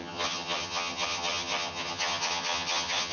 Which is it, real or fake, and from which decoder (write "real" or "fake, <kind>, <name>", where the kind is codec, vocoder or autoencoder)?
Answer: fake, vocoder, HiFi-GAN